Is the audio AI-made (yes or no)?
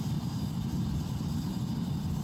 yes